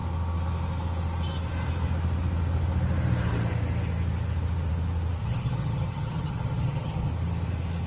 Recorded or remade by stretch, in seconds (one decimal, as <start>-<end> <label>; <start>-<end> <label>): 0.0-5.2 recorded; 5.2-7.1 remade; 7.1-7.9 recorded